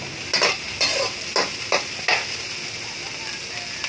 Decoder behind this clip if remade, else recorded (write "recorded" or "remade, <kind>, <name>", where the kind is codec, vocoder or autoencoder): recorded